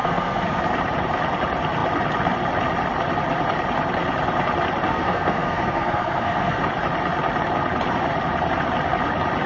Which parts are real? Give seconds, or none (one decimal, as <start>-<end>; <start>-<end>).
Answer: 0.6-4.9; 6.6-9.5